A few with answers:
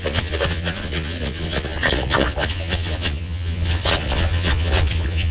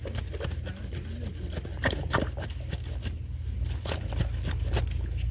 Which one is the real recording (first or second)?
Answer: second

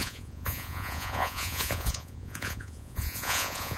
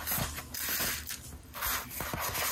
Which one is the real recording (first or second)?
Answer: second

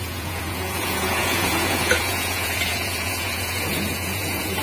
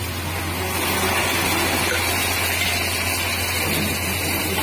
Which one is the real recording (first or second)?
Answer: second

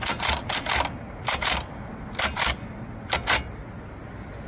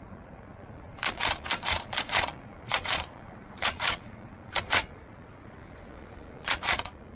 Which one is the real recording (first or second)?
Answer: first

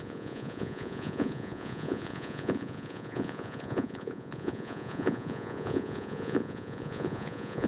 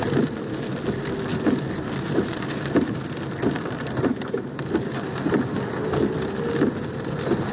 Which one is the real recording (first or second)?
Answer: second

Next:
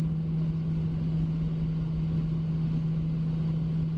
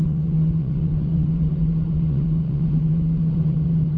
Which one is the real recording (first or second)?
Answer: first